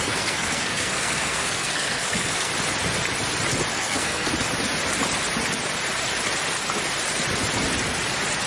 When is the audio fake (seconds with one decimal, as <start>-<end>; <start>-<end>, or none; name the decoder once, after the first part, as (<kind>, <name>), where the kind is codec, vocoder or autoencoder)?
0.0-2.5 (codec, SNAC); 3.7-4.3